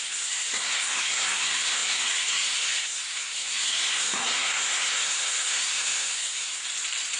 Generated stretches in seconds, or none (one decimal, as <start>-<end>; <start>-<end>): 0.0-6.6